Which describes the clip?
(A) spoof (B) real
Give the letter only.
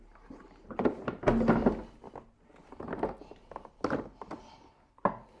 B